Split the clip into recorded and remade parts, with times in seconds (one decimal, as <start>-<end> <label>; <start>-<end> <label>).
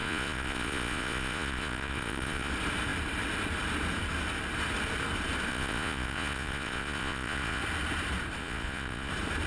0.0-2.5 remade; 2.5-5.5 recorded; 5.5-7.6 remade; 7.6-8.4 recorded; 8.4-9.1 remade; 9.1-9.5 recorded